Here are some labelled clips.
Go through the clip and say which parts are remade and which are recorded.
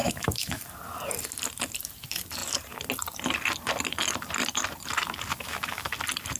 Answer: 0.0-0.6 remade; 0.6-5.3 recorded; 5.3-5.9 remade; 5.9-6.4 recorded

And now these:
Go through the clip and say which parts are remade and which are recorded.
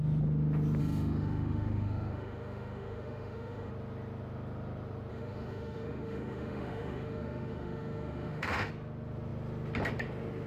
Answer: 0.0-0.8 recorded; 0.8-3.7 remade; 3.7-5.1 recorded; 5.1-8.7 remade; 8.7-10.5 recorded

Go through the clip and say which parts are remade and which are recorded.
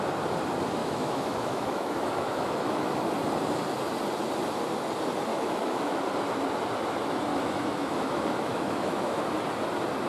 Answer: 0.0-0.8 recorded; 0.8-3.1 remade; 3.1-5.3 recorded; 5.3-6.0 remade; 6.0-7.3 recorded; 7.3-9.2 remade; 9.2-10.1 recorded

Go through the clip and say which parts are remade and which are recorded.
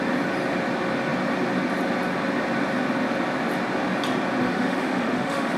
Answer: 0.0-4.4 recorded; 4.4-5.6 remade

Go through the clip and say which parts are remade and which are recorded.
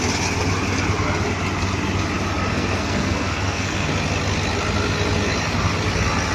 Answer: 0.0-2.5 recorded; 2.5-3.9 remade; 3.9-6.3 recorded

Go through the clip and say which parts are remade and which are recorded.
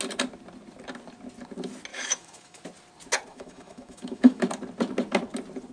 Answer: 0.0-1.9 recorded; 1.9-2.6 remade; 2.6-3.3 recorded; 3.3-4.4 remade; 4.4-5.7 recorded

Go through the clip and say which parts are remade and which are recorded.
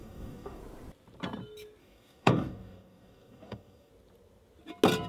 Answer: 0.0-0.6 remade; 0.6-1.8 recorded; 1.8-3.9 remade; 3.9-5.1 recorded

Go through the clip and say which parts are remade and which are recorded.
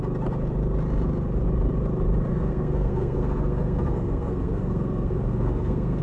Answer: 0.0-2.3 recorded; 2.3-6.0 remade